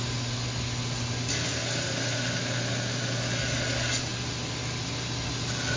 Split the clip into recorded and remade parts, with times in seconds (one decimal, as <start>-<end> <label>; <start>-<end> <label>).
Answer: 0.0-5.8 recorded